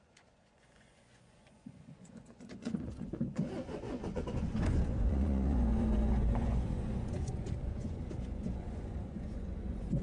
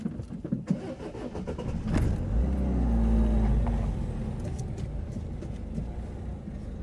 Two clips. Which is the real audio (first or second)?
second